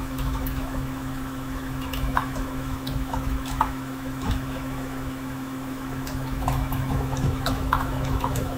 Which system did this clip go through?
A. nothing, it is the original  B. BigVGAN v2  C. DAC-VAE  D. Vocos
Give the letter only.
C